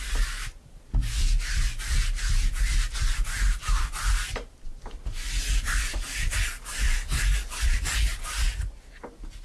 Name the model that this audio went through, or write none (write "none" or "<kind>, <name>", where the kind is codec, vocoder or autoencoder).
none